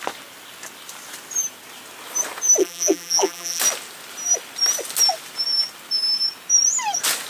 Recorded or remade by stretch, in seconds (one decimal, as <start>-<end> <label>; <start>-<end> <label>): 0.0-2.6 recorded; 2.6-3.6 remade; 3.6-7.3 recorded

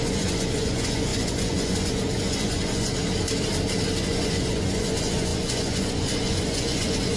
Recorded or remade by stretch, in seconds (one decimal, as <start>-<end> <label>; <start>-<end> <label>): 0.0-2.9 remade; 2.9-4.0 recorded; 4.0-7.2 remade

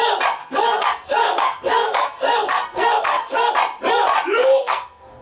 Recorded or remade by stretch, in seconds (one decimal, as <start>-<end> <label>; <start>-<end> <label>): 0.0-0.4 recorded; 0.4-3.5 remade; 3.5-4.4 recorded; 4.4-5.2 remade

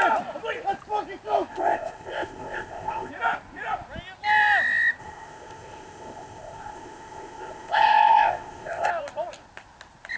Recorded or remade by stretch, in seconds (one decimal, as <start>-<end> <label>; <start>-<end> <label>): 0.0-1.5 recorded; 1.5-3.1 remade; 3.1-5.0 recorded; 5.0-8.9 remade; 8.9-10.2 recorded

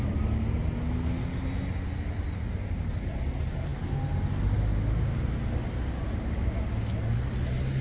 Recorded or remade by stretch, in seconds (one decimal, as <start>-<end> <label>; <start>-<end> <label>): 0.0-7.8 recorded

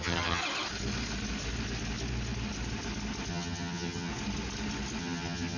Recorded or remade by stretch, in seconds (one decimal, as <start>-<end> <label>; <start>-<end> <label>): 0.0-0.4 remade; 0.4-3.3 recorded; 3.3-4.1 remade; 4.1-5.0 recorded; 5.0-5.6 remade

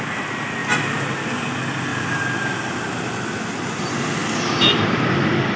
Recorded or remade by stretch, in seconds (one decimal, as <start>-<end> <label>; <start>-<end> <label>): 0.0-5.6 recorded